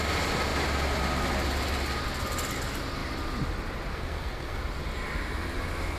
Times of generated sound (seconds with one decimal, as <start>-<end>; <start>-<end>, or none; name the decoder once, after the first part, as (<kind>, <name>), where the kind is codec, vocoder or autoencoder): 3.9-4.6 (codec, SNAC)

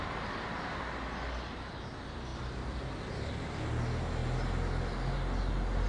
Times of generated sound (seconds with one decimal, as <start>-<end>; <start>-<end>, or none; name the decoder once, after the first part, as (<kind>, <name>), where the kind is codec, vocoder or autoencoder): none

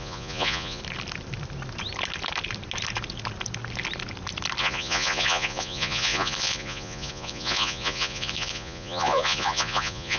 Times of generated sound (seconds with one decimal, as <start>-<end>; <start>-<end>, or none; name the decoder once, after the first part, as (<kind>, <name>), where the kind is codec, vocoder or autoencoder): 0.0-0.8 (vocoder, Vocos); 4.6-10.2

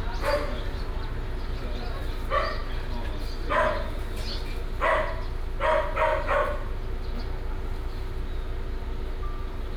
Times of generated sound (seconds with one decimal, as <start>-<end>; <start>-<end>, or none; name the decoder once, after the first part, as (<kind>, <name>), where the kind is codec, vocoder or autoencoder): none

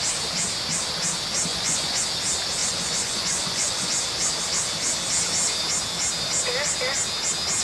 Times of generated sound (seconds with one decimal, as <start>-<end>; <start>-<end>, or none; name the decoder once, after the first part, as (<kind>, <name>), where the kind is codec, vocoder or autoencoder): 1.5-2.0 (vocoder, Vocos); 2.6-4.0

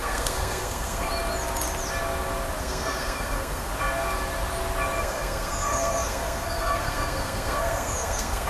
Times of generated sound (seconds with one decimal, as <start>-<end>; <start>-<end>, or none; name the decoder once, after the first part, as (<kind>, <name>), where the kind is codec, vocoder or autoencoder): 0.0-1.1 (codec, SNAC); 2.6-3.7; 5.0-8.5

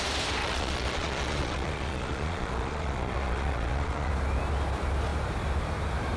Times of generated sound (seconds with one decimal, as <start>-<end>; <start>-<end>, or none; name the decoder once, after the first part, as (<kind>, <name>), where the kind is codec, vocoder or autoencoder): 0.4-4.1 (vocoder, Vocos)